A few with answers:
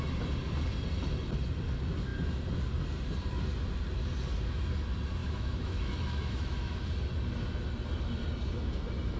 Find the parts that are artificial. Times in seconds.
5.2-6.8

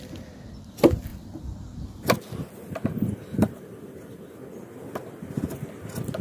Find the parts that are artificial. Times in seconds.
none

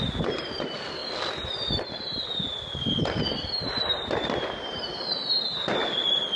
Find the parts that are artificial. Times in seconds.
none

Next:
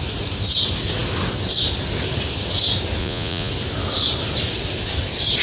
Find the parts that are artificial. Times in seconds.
3.0-3.5

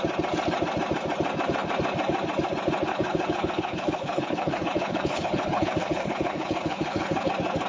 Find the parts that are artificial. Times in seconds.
2.9-7.3

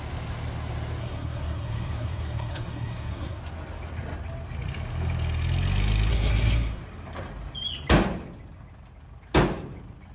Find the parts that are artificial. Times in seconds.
1.0-3.4; 6.1-6.8

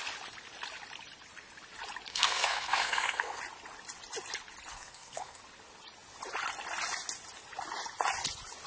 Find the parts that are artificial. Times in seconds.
2.1-3.4; 4.7-5.4